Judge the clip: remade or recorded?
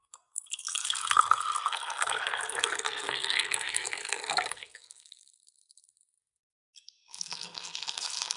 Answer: remade